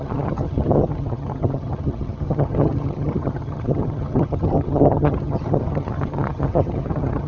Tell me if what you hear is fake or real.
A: fake